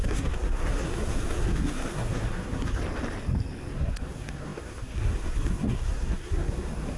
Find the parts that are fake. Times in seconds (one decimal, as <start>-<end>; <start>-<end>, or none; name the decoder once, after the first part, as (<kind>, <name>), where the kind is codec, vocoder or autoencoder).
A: 0.0-2.8 (codec, SNAC); 3.7-7.0